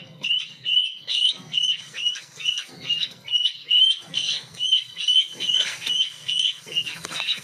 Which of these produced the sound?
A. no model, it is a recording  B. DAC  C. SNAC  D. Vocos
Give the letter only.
C